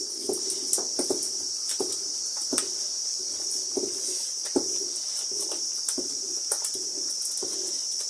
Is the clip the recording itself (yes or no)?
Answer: yes